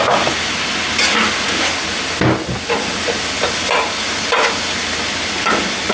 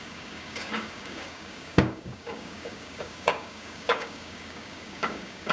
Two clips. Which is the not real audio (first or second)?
second